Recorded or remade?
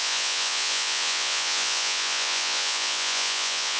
remade